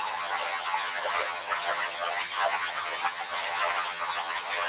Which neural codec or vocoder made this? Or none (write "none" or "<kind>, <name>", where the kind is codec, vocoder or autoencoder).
vocoder, HiFi-GAN